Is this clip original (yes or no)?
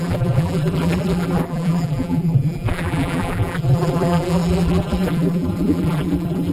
no